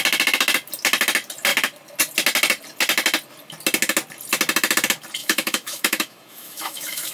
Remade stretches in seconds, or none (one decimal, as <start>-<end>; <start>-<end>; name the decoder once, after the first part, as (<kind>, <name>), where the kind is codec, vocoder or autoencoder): 5.2-7.1 (autoencoder, DAC-VAE)